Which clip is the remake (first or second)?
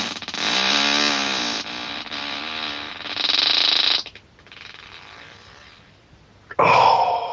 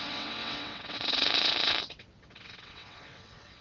second